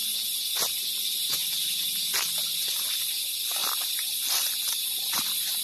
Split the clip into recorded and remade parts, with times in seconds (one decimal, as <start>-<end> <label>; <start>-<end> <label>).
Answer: 0.0-3.6 recorded; 3.6-5.6 remade